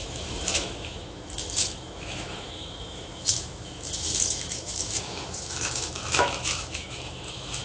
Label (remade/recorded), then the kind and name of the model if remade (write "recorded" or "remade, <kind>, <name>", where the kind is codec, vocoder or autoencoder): remade, autoencoder, DAC-VAE